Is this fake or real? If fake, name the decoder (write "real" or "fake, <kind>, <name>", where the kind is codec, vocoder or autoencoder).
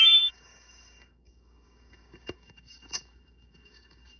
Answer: fake, codec, DAC